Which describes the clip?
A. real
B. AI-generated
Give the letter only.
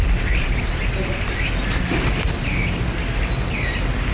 A